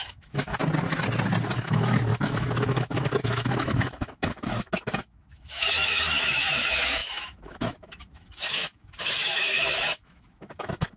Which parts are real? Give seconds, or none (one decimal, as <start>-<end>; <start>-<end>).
0.6-1.6